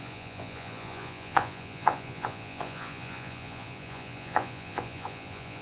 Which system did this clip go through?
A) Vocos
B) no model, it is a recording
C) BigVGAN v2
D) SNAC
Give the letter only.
A